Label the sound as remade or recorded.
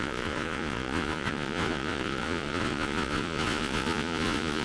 remade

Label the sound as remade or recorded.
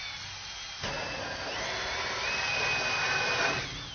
recorded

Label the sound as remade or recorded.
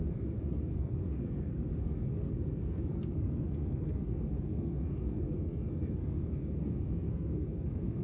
remade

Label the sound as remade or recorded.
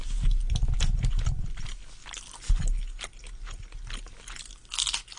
recorded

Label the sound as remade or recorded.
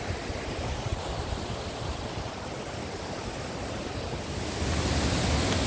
recorded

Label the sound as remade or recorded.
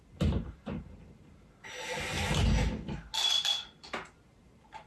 recorded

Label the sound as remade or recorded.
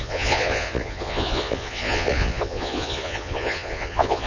remade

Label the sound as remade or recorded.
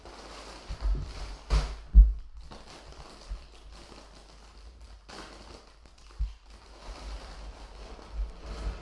recorded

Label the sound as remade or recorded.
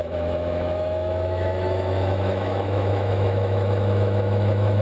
remade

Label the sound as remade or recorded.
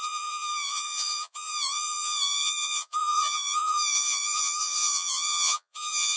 remade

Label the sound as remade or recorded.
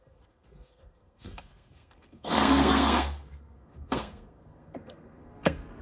remade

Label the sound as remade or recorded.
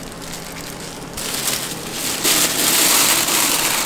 recorded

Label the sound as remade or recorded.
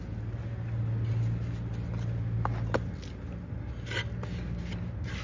recorded